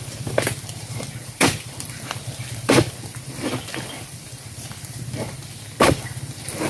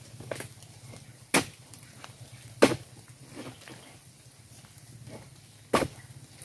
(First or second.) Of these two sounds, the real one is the second